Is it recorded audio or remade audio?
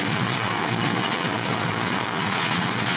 remade